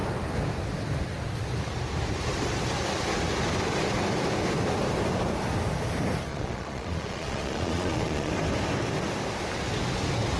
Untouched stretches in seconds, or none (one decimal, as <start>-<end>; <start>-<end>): 0.0-6.3; 8.3-10.4